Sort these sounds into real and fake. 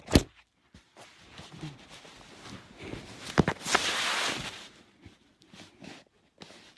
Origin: real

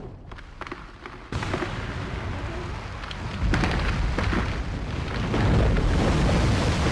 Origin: real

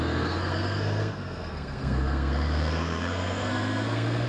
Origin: fake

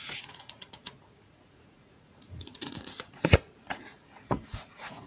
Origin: fake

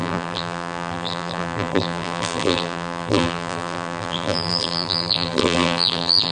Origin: fake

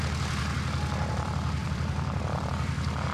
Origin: fake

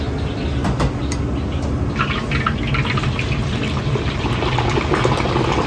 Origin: real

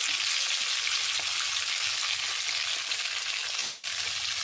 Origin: real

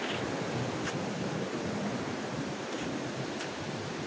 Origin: real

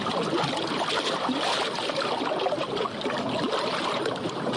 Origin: real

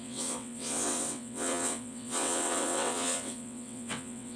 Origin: fake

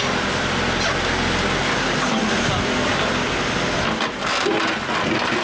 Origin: real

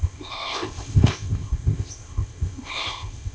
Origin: fake